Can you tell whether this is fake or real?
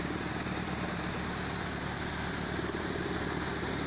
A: fake